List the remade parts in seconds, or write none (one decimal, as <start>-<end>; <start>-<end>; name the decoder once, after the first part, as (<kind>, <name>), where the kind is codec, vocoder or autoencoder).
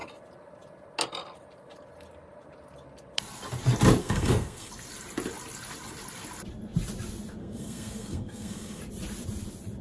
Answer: 4.0-4.7 (codec, SNAC); 7.4-8.8